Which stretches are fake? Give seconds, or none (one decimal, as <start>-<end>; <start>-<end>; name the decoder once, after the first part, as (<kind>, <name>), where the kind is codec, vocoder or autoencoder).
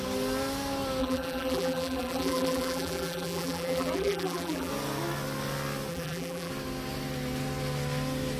1.0-4.7 (vocoder, BigVGAN v2); 5.9-6.5